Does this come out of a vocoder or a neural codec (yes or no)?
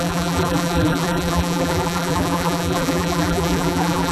yes